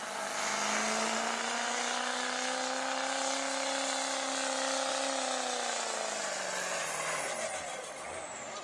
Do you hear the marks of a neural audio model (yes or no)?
no